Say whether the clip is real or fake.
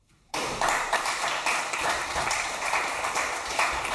fake